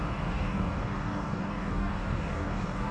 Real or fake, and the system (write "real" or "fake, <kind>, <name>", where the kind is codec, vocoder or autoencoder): fake, codec, DAC